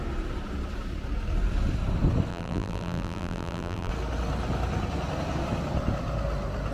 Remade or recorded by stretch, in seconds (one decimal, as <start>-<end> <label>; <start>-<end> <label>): 0.0-2.3 recorded; 2.3-3.9 remade; 3.9-6.7 recorded